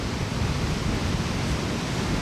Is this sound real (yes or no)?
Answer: yes